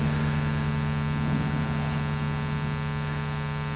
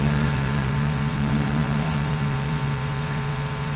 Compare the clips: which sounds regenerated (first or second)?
second